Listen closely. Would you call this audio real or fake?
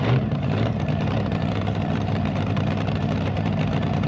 fake